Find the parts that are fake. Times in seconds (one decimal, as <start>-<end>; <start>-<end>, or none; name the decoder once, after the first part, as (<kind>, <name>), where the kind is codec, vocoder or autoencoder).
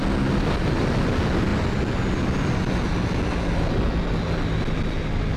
none